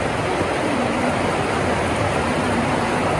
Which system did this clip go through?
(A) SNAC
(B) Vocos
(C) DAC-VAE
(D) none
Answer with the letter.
D